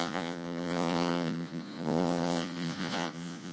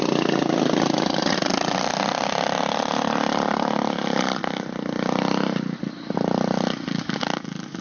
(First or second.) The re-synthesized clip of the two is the first